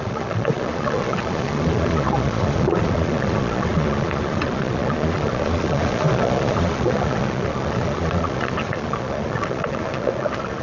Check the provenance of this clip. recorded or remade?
remade